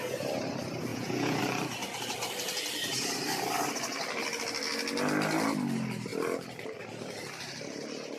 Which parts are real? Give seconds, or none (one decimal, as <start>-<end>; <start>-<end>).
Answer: 0.0-0.9; 1.4-8.2